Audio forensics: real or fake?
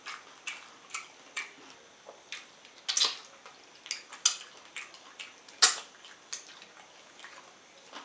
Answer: real